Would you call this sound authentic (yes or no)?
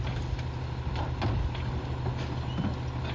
yes